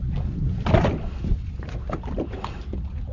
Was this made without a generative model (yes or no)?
yes